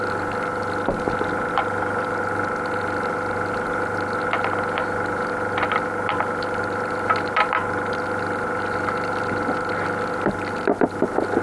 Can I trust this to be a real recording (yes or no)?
yes